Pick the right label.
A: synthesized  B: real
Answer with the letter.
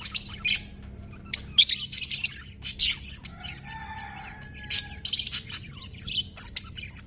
B